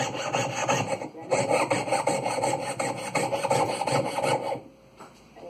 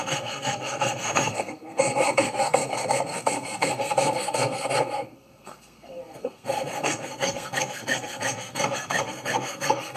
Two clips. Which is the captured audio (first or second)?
first